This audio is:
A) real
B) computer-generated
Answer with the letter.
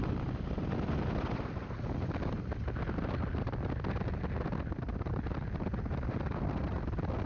A